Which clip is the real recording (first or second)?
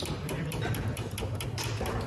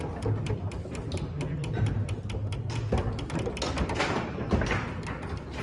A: second